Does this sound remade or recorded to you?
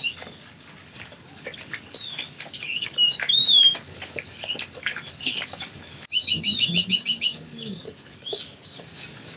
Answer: remade